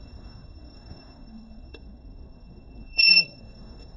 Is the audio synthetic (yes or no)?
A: yes